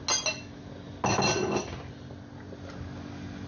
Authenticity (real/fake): real